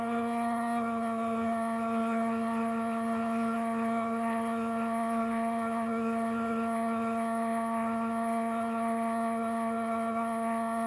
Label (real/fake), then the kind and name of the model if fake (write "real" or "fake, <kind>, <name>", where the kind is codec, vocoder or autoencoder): fake, codec, SNAC